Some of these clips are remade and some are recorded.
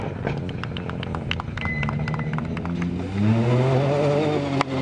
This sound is recorded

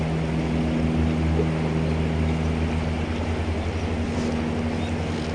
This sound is recorded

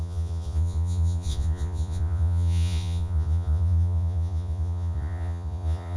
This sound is remade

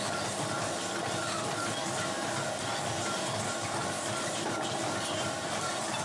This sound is recorded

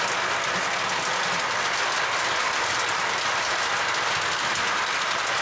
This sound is recorded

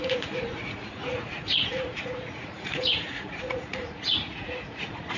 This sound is remade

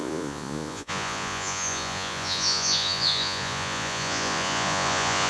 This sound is remade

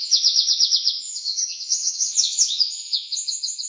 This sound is remade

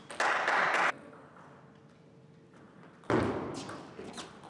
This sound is recorded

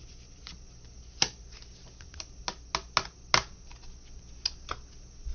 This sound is recorded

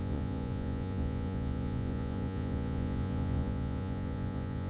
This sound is remade